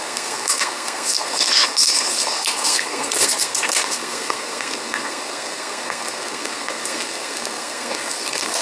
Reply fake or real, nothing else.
fake